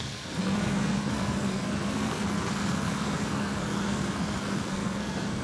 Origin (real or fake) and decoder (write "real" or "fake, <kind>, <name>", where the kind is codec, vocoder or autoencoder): fake, codec, SNAC